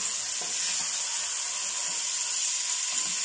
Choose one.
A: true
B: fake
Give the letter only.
A